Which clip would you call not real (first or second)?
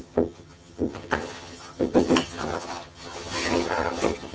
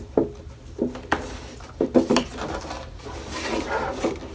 first